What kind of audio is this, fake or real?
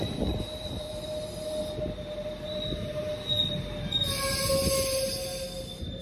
real